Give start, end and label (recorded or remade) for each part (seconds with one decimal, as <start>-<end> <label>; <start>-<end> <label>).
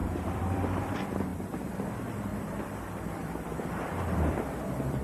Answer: 0.0-5.0 remade